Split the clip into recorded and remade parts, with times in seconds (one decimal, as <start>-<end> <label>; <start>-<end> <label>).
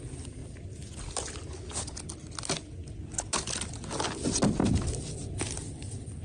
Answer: 0.0-4.6 recorded; 4.6-6.2 remade